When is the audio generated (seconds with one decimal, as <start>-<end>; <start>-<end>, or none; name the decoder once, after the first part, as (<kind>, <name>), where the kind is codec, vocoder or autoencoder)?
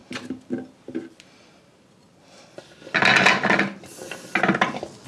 none